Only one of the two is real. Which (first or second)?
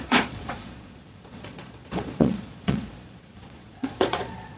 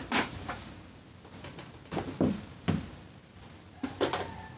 second